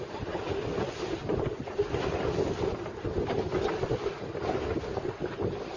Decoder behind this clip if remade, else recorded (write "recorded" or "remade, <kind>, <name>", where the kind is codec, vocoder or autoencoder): recorded